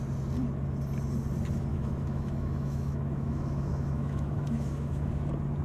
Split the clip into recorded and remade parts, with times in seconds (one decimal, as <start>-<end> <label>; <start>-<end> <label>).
0.0-1.7 recorded; 1.7-5.1 remade; 5.1-5.6 recorded